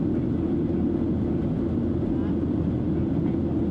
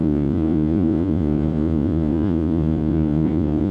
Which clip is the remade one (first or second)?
second